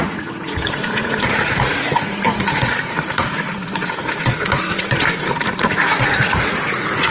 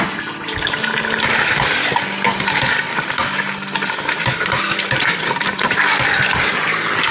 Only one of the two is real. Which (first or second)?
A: second